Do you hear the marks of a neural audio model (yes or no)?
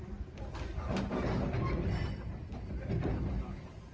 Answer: no